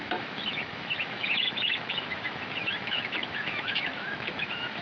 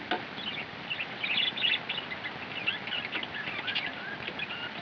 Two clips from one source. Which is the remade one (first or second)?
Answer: first